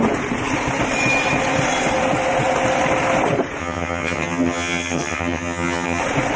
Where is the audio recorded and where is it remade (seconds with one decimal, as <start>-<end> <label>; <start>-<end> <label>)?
0.0-3.6 recorded; 3.6-6.0 remade; 6.0-6.4 recorded